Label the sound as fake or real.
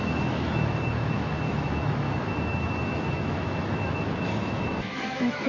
fake